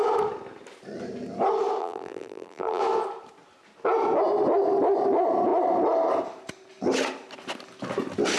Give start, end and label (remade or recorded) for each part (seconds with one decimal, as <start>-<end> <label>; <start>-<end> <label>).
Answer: 0.0-1.8 recorded; 1.8-2.8 remade; 2.8-8.4 recorded